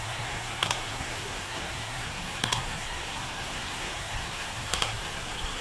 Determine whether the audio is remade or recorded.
remade